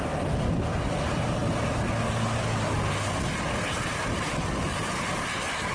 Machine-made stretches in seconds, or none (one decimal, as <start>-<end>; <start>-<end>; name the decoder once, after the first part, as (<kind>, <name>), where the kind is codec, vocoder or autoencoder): none